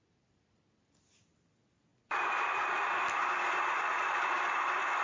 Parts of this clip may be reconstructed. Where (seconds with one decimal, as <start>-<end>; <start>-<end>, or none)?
none